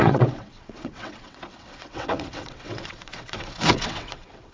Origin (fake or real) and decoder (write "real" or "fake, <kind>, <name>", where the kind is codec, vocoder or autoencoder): fake, vocoder, WaveNeXt